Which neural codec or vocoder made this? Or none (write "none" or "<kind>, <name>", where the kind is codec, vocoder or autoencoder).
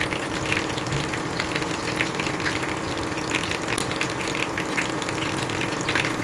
none